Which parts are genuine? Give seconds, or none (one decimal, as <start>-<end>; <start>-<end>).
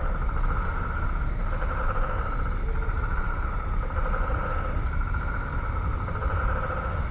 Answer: 0.0-7.1